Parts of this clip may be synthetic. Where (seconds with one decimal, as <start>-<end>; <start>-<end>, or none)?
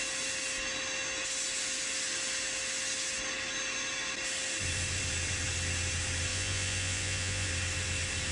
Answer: 6.3-7.5